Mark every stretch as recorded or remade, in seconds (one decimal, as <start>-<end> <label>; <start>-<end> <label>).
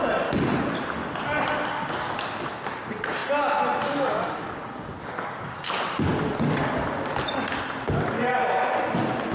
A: 0.0-9.3 recorded